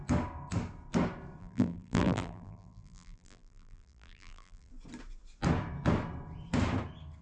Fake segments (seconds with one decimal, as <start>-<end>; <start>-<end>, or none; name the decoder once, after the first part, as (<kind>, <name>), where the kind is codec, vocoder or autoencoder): 1.4-4.7 (vocoder, BigVGAN v2)